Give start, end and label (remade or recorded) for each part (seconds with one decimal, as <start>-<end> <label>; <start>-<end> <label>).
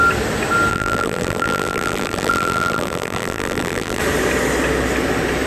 0.0-0.7 recorded; 0.7-4.0 remade; 4.0-5.5 recorded